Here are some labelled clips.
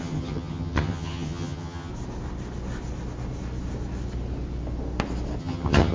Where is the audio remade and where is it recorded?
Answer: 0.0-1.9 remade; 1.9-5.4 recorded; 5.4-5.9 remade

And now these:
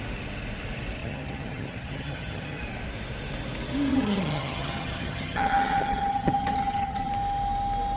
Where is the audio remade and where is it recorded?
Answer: 0.0-1.0 recorded; 1.0-2.6 remade; 2.6-3.9 recorded; 3.9-7.1 remade; 7.1-8.0 recorded